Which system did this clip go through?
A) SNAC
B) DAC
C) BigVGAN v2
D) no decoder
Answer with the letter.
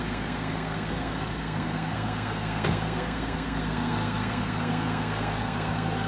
A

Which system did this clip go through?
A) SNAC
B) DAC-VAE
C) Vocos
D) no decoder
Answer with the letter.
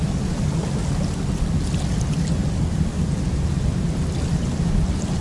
D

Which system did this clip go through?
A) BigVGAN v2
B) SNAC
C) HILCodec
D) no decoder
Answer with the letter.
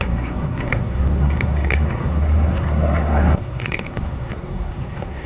B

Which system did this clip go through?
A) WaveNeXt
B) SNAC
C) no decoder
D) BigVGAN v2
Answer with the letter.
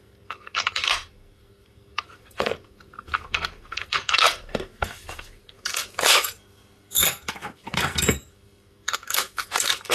B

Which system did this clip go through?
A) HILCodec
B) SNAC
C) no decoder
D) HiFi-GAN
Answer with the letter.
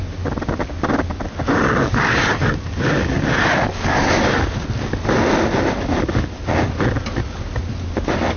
C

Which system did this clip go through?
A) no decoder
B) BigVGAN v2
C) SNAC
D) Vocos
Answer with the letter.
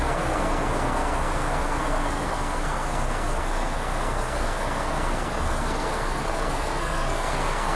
C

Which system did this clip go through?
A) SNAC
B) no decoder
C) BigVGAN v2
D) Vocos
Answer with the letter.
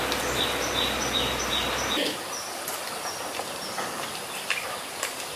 B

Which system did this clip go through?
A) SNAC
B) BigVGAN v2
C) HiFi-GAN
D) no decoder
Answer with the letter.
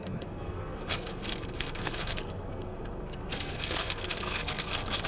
A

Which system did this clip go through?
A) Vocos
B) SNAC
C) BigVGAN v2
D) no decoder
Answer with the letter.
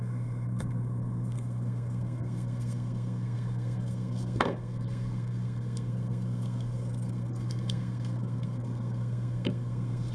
B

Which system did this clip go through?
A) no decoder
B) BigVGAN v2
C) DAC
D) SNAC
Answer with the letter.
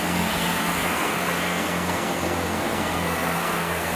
D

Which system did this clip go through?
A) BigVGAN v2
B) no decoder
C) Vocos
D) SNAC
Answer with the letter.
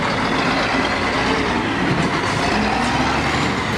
B